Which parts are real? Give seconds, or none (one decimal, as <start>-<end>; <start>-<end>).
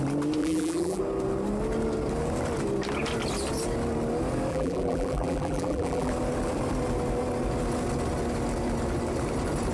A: 0.0-0.4; 1.0-4.5; 6.1-9.7